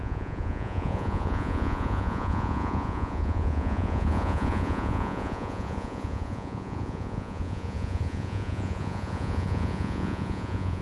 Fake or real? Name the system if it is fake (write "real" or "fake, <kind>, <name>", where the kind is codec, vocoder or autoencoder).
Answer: fake, vocoder, Vocos